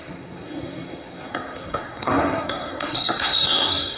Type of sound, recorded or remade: remade